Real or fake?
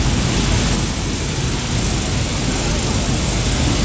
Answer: real